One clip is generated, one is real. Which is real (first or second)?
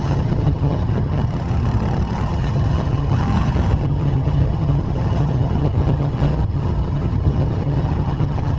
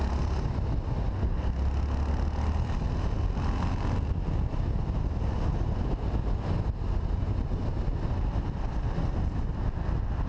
second